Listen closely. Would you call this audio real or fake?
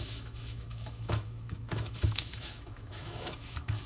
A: fake